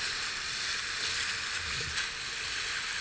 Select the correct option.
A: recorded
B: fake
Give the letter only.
A